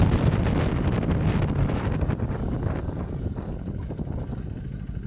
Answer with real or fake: real